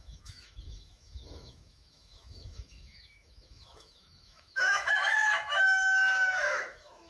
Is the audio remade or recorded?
remade